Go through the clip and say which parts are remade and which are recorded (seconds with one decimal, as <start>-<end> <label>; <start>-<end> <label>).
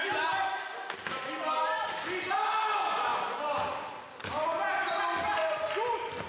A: 0.0-6.3 recorded